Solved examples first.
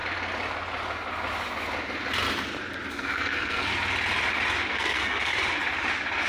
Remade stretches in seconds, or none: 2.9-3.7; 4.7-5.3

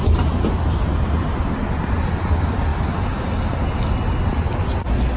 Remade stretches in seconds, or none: none

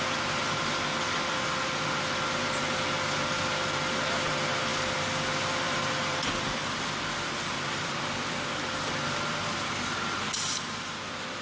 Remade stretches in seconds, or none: 4.7-9.7

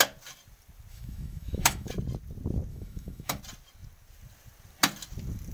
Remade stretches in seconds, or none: 0.9-1.9; 2.7-3.4

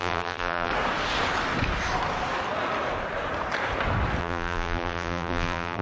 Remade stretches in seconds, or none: 0.0-0.7; 4.2-5.8